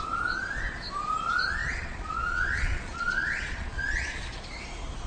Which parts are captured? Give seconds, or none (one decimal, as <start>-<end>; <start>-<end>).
0.0-1.6; 4.5-5.1